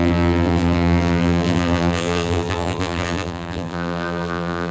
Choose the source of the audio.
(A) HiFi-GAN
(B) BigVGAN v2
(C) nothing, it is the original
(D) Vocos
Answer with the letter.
B